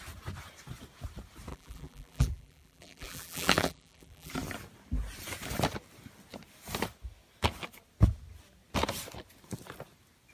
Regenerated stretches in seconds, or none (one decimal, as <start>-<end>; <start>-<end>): 1.5-4.3